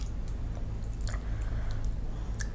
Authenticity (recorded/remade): recorded